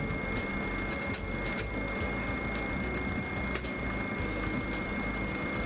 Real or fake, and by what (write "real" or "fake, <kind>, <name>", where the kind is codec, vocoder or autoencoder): real